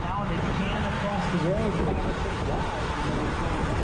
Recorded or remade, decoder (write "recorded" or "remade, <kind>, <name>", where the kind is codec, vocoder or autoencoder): recorded